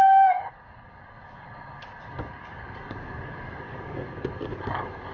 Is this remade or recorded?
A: remade